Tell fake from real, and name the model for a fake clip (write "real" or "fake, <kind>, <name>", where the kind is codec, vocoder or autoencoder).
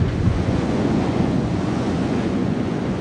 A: fake, vocoder, Vocos